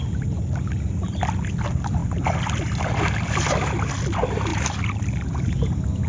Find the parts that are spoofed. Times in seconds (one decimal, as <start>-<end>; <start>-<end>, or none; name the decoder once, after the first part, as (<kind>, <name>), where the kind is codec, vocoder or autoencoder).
none